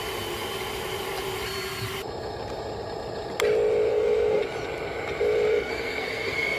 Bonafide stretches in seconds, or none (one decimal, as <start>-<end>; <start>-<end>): 0.0-3.9; 4.4-5.5